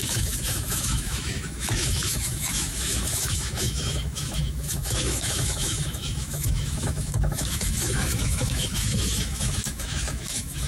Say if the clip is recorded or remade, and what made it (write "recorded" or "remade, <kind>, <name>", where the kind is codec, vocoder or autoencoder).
remade, autoencoder, DAC-VAE